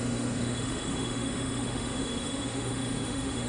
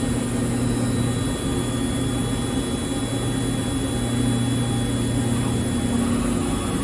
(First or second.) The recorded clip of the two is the second